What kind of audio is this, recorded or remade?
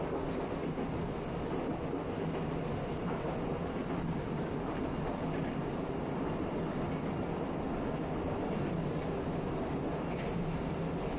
recorded